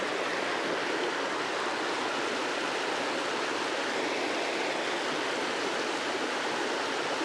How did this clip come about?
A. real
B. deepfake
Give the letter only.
A